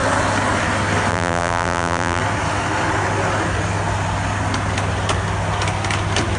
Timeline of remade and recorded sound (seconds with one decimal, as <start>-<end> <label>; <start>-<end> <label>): 0.0-1.1 recorded; 1.1-2.2 remade; 2.2-6.4 recorded